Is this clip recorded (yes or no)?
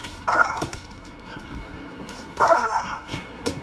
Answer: no